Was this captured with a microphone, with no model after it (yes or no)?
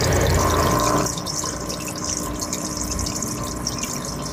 no